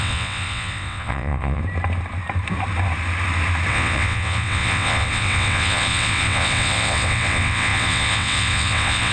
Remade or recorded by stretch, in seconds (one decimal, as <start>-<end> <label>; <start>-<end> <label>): 0.0-1.6 remade; 1.6-3.7 recorded; 3.7-9.1 remade